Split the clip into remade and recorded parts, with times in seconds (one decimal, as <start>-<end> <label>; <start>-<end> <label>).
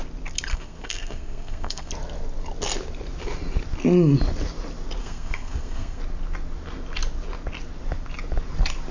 0.0-0.5 recorded; 0.5-1.9 remade; 1.9-5.0 recorded; 5.0-6.0 remade; 6.0-8.9 recorded